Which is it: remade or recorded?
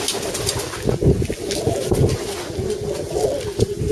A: recorded